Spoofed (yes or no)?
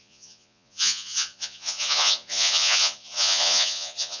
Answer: yes